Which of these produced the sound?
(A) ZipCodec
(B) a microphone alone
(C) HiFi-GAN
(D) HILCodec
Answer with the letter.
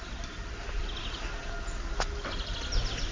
B